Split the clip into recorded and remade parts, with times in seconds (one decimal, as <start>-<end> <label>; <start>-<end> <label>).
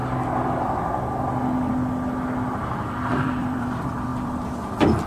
0.0-3.1 recorded; 3.1-5.1 remade